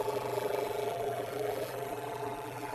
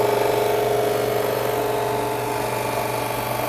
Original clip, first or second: second